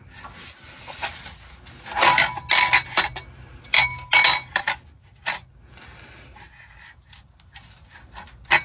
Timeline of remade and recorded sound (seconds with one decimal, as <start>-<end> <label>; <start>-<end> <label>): 0.0-8.6 recorded